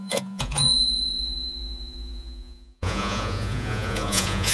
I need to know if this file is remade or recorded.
remade